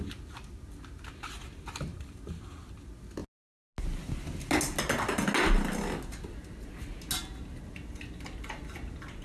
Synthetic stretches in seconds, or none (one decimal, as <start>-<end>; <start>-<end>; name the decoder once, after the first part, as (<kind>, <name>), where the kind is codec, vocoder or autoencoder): 1.9-2.6 (vocoder, BigVGAN v2)